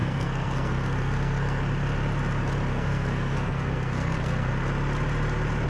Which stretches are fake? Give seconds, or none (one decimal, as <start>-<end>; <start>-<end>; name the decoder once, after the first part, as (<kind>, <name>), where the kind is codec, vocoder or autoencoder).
0.0-1.6 (codec, SNAC); 2.7-4.5